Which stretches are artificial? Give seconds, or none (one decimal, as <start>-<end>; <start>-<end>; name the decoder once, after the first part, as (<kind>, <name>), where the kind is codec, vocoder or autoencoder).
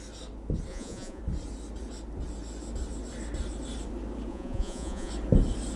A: 0.7-1.2 (vocoder, Vocos); 4.3-5.1